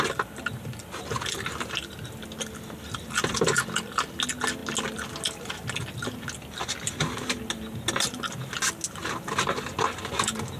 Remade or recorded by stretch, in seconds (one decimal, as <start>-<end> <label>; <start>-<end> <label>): 0.0-10.6 recorded